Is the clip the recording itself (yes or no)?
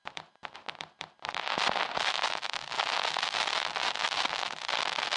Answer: yes